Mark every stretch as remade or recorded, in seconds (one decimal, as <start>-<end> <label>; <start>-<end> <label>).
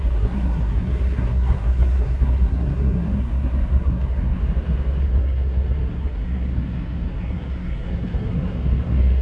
0.0-4.4 remade; 4.4-5.0 recorded; 5.0-9.2 remade